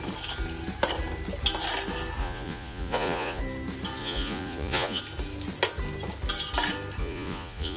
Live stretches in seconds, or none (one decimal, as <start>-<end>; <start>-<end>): 0.0-2.2; 3.4-4.0; 5.0-7.0